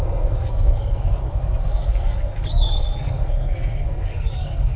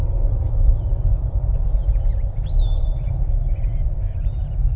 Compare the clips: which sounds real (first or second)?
second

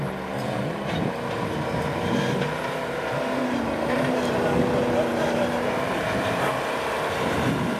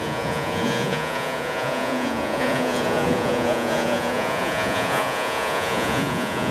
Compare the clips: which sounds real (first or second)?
first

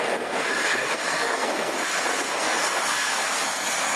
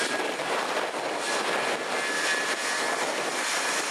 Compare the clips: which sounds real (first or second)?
second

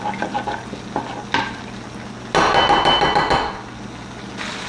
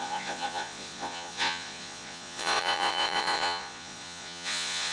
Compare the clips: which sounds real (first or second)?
first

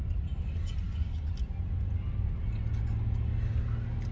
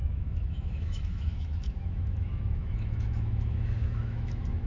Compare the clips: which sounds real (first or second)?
first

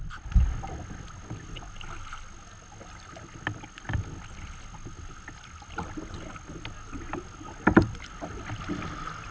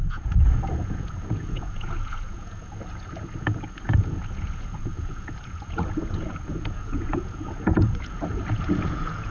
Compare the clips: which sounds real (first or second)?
first